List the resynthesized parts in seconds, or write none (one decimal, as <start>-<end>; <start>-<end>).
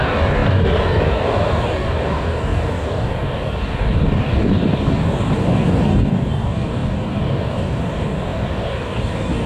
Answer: 0.0-9.5